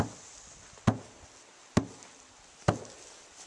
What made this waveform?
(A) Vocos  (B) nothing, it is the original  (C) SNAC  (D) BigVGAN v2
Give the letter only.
B